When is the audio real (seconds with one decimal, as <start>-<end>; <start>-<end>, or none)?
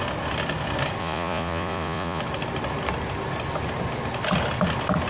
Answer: 0.0-1.0; 2.2-5.1